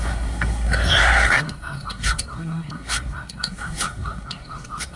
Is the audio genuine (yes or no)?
no